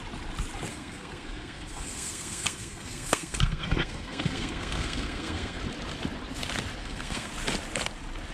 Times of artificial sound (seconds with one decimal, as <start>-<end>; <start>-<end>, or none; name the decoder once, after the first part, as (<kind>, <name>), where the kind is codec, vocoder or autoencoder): 0.7-5.6 (codec, SNAC); 6.8-7.3